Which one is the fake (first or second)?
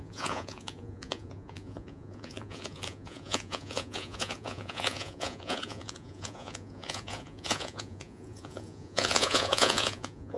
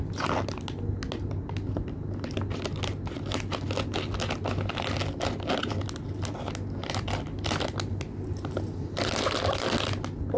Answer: first